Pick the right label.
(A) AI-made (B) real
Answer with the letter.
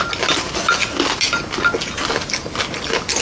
B